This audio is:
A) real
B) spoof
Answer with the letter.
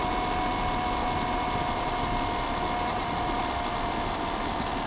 A